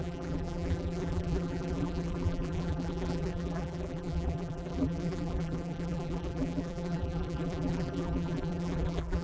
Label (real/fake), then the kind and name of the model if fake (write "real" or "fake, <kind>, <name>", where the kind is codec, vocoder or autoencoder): fake, vocoder, BigVGAN v2